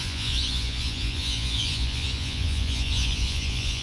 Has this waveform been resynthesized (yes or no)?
yes